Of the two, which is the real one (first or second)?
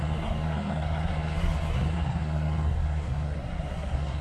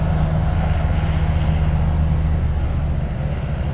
second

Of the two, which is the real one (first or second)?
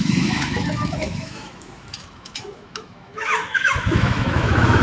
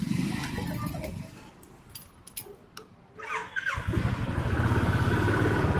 second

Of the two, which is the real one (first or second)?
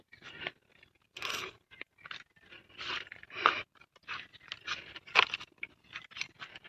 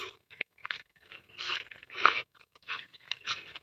first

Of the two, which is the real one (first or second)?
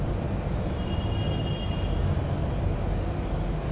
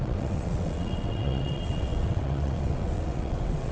first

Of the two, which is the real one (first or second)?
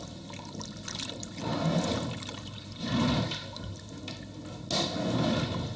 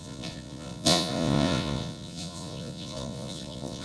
first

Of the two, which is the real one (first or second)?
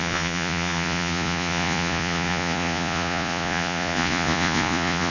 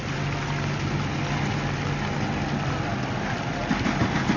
second